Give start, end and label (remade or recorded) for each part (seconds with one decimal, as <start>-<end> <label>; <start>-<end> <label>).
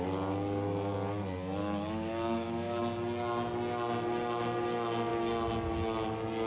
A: 0.0-1.6 recorded; 1.6-2.8 remade; 2.8-6.5 recorded